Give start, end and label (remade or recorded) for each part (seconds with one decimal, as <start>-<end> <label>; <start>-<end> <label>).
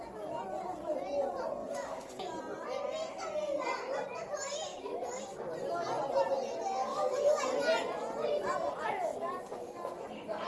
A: 0.0-1.6 recorded; 1.6-2.4 remade; 2.4-6.9 recorded; 6.9-7.4 remade; 7.4-10.5 recorded